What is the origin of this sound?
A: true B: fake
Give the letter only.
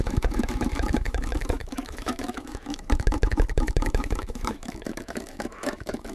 B